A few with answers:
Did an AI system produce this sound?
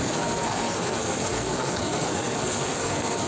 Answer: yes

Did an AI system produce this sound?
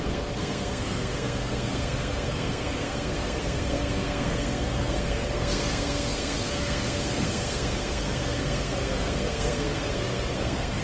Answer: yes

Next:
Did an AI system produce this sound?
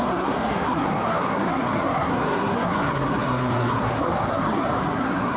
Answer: yes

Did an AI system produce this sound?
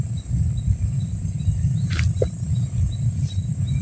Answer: no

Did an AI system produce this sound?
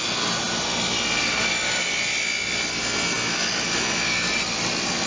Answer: no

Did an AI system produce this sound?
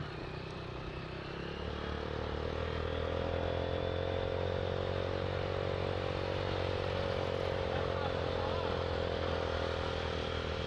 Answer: no